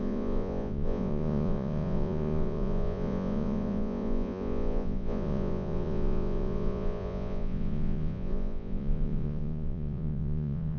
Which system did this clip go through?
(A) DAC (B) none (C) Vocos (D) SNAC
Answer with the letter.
C